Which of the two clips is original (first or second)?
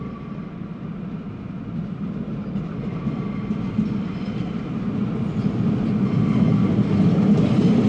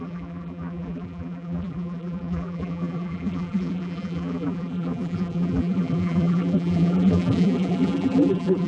first